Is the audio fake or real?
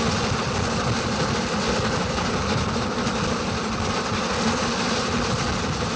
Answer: real